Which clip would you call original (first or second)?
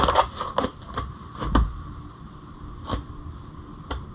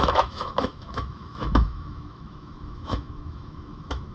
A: first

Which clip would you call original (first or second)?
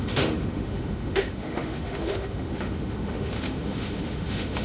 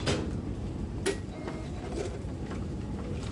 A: second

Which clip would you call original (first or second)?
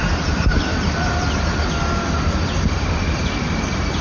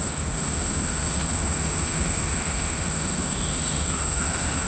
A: first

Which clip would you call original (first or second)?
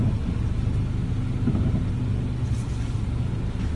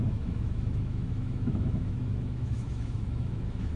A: first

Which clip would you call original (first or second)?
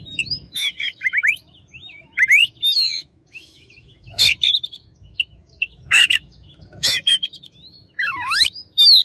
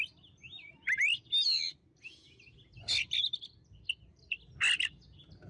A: second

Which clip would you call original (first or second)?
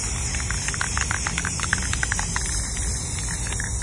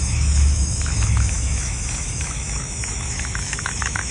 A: first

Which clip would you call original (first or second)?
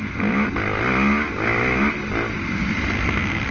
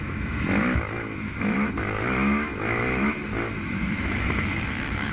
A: first